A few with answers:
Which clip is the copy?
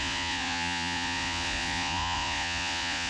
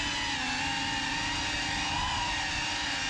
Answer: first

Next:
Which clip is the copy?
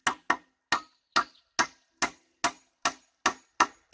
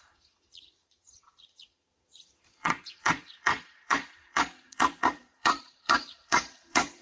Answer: second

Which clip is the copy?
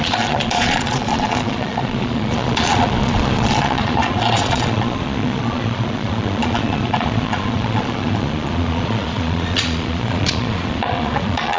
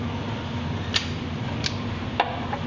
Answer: first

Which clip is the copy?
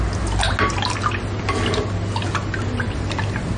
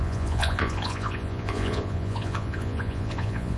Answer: second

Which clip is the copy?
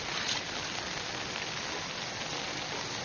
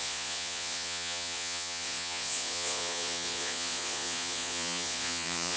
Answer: second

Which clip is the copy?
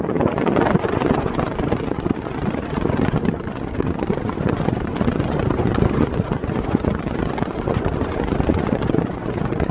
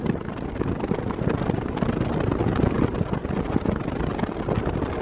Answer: first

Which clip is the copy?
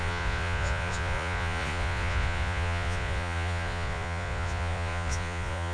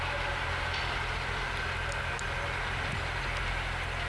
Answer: first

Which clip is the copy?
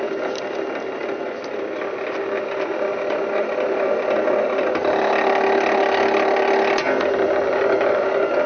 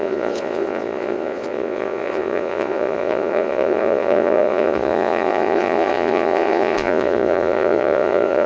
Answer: second